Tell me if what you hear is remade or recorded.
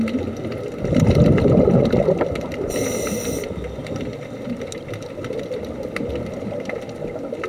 recorded